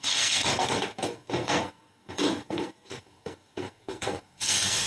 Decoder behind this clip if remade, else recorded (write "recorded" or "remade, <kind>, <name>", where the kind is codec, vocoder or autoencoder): remade, codec, SNAC